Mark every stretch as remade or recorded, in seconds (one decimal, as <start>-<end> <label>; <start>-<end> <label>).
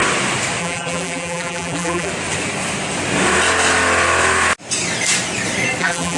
0.0-0.6 recorded; 0.6-2.1 remade; 2.1-5.8 recorded; 5.8-6.2 remade